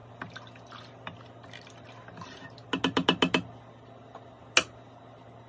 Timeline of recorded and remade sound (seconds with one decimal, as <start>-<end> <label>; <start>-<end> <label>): 0.0-5.5 recorded